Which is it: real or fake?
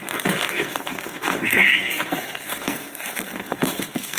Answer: fake